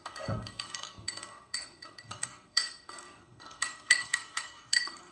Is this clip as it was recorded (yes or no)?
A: no